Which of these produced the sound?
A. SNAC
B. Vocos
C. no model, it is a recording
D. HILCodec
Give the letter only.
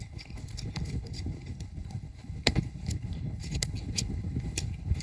D